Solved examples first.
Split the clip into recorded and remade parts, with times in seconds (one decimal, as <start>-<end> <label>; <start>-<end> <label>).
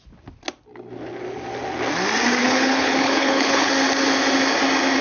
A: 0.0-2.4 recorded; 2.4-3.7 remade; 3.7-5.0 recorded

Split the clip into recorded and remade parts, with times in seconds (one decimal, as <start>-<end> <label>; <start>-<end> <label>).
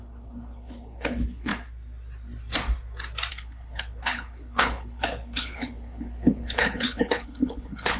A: 0.0-1.5 remade; 1.5-3.3 recorded; 3.3-8.0 remade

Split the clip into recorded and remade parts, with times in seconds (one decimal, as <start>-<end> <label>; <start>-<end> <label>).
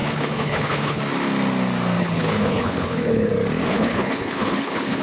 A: 0.0-1.0 remade; 1.0-2.0 recorded; 2.0-3.3 remade; 3.3-3.7 recorded; 3.7-5.0 remade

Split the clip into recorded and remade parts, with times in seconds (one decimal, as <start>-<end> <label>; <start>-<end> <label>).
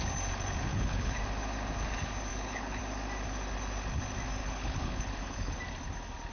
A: 0.0-0.7 recorded; 0.7-1.2 remade; 1.2-2.3 recorded; 2.3-2.8 remade; 2.8-4.4 recorded; 4.4-5.6 remade; 5.6-6.3 recorded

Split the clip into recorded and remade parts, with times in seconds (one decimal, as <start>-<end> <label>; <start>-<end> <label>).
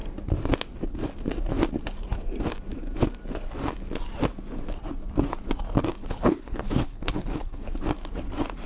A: 0.0-6.0 recorded; 6.0-7.7 remade; 7.7-8.7 recorded